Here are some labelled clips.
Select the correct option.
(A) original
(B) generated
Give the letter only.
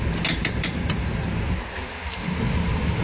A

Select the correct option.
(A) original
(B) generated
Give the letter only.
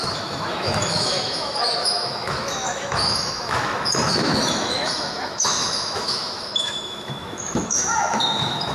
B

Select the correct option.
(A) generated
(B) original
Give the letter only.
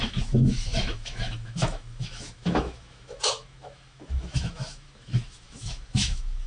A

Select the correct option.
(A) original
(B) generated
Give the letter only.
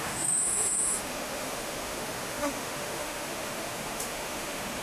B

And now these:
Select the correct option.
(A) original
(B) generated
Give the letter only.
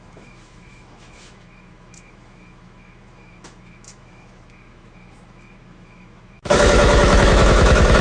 B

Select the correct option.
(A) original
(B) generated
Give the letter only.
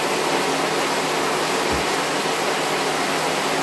A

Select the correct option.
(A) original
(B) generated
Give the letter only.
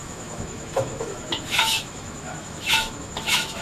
B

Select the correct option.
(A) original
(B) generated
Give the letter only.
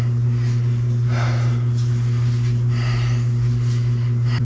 A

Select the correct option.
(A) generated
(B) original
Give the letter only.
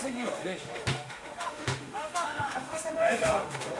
A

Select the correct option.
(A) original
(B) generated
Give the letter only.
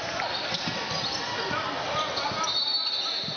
A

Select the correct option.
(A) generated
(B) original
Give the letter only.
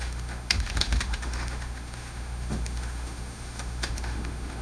A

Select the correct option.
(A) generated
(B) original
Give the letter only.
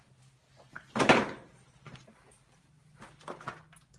B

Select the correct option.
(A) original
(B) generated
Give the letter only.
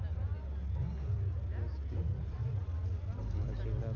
A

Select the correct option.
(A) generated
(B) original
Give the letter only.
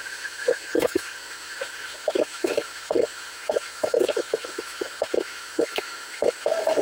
A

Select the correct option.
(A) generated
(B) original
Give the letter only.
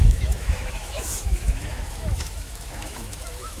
A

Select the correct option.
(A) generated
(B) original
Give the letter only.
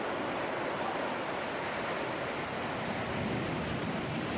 B